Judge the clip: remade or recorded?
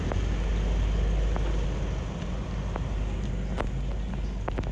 recorded